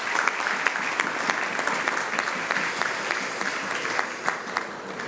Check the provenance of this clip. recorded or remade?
recorded